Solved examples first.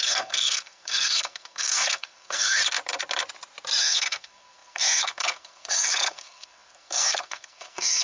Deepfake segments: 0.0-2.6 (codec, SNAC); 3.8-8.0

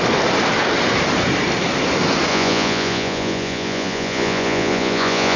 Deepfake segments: 2.3-5.4 (vocoder, Vocos)

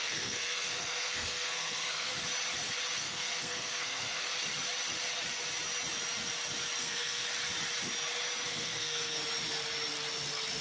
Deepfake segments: 0.0-2.1 (codec, SNAC); 3.0-4.3; 6.8-7.2; 8.5-9.2

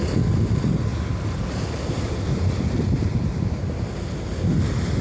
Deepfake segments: 0.9-3.8 (vocoder, BigVGAN v2)